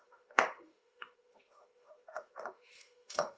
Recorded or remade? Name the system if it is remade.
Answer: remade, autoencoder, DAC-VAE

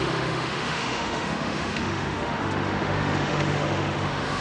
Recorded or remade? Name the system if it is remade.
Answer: remade, autoencoder, DAC-VAE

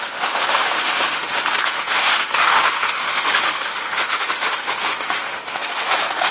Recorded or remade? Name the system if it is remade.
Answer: remade, autoencoder, DAC-VAE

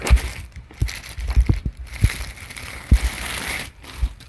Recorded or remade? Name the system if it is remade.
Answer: recorded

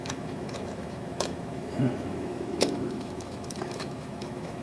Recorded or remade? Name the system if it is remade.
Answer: remade, autoencoder, DAC-VAE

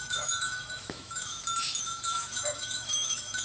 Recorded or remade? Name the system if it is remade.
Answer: remade, autoencoder, DAC-VAE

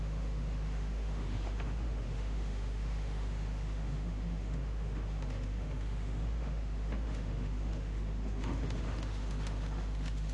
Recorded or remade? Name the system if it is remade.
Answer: remade, autoencoder, DAC-VAE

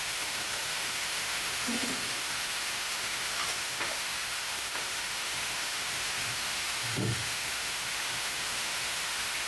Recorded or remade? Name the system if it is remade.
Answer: remade, autoencoder, DAC-VAE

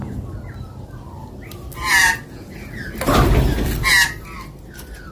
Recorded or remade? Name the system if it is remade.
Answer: recorded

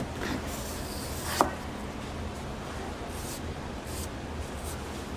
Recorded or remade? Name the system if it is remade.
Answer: recorded